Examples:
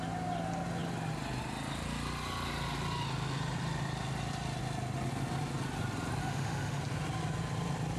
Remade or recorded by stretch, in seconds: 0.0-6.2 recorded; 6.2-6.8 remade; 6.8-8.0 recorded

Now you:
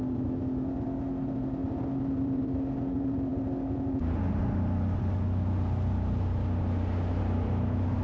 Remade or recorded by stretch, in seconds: 0.0-8.0 recorded

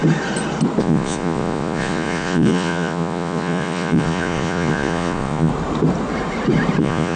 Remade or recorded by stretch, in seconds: 0.0-0.8 recorded; 0.8-5.5 remade; 5.5-6.8 recorded; 6.8-7.2 remade

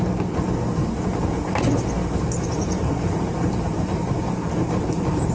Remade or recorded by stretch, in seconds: 0.0-2.0 recorded; 2.0-5.3 remade

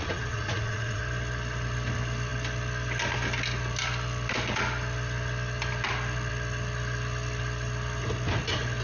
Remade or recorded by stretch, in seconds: 0.0-1.0 remade; 1.0-8.8 recorded

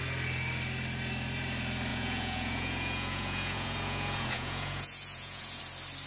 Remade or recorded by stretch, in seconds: 0.0-1.9 recorded; 1.9-5.6 remade; 5.6-6.1 recorded

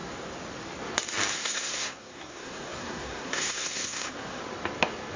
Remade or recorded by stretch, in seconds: 0.0-1.3 recorded; 1.3-4.4 remade; 4.4-5.2 recorded